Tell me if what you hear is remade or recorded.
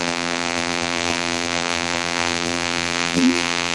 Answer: remade